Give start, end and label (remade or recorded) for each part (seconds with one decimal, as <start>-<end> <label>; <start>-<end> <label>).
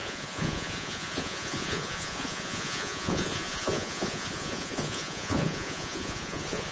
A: 0.0-6.7 remade